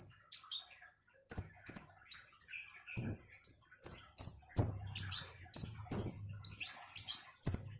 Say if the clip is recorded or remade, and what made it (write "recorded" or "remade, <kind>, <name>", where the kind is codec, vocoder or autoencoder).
recorded